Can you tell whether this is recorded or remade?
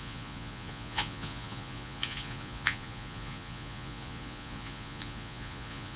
remade